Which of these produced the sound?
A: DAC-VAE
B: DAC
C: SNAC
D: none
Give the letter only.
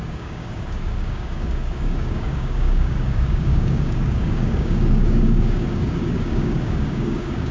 B